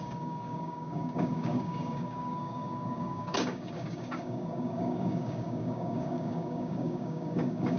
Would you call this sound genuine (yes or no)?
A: no